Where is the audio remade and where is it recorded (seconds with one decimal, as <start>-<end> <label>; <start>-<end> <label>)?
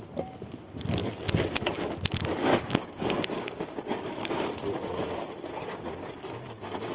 0.0-2.5 recorded; 2.5-4.3 remade; 4.3-5.6 recorded; 5.6-6.2 remade; 6.2-6.9 recorded